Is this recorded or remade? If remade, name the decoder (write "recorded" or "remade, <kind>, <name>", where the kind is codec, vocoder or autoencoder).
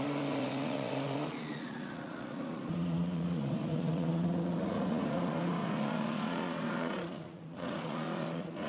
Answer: remade, vocoder, Vocos